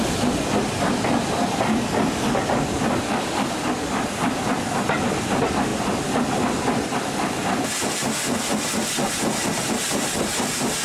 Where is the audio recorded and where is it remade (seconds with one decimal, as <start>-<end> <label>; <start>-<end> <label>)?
0.0-10.8 recorded